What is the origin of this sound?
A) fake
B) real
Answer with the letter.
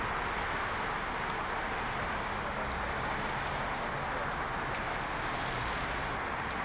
B